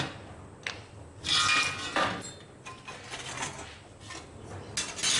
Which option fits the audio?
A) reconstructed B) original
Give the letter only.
B